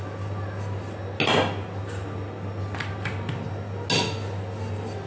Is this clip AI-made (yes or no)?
no